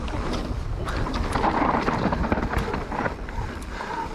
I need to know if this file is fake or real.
real